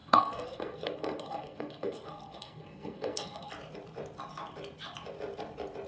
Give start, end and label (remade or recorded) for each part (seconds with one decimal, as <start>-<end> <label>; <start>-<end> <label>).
0.0-3.5 remade; 3.5-5.9 recorded